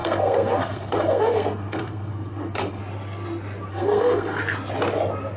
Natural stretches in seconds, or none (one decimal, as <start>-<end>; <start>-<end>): 2.8-3.7; 4.4-5.4